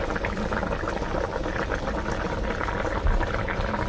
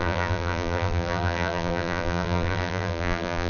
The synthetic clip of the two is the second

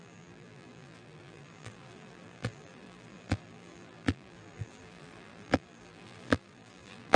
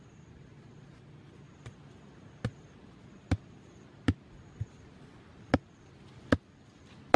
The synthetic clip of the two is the first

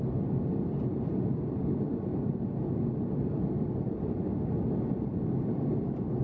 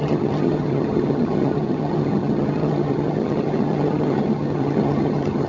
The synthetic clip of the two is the second